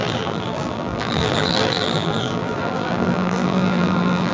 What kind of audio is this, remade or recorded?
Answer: remade